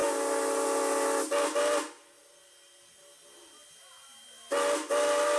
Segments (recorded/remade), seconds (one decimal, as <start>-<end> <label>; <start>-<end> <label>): 0.0-5.4 recorded